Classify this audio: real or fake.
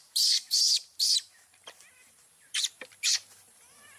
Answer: fake